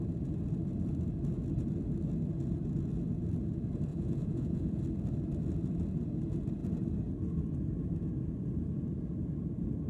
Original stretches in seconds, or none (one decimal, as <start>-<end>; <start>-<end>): 0.0-3.9; 4.8-9.9